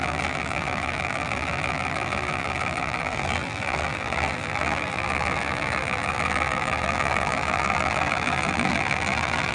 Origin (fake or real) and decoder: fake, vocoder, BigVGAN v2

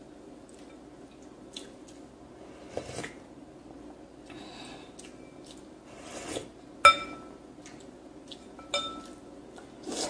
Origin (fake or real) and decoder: real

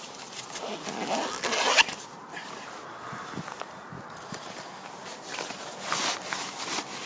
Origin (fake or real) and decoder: real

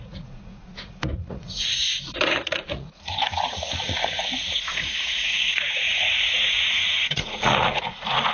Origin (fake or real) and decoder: fake, vocoder, Vocos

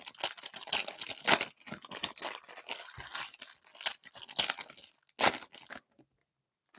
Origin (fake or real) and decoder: real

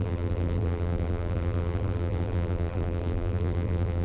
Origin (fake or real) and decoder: fake, vocoder, BigVGAN v2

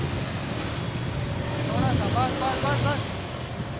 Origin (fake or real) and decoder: real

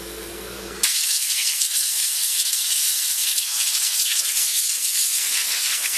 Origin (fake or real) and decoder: fake, codec, SNAC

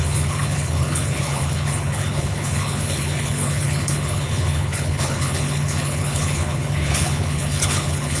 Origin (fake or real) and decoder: fake, codec, HILCodec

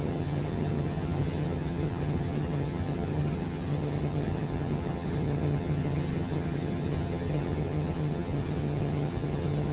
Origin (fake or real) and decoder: fake, vocoder, HiFi-GAN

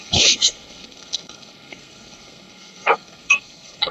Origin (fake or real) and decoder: fake, codec, SNAC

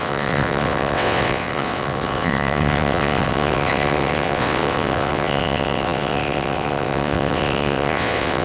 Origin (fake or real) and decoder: fake, vocoder, WaveNeXt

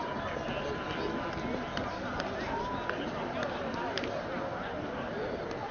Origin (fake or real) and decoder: real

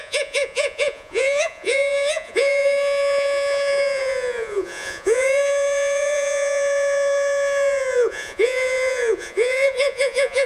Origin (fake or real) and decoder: fake, vocoder, Vocos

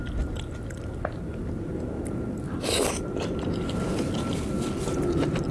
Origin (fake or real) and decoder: real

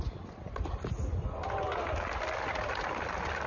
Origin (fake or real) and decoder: real